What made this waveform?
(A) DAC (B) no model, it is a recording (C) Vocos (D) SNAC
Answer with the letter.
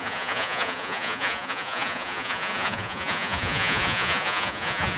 C